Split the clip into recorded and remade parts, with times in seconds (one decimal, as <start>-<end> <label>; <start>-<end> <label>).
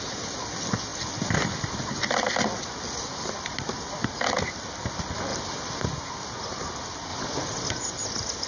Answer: 0.0-8.5 recorded